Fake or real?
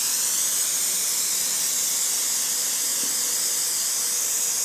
real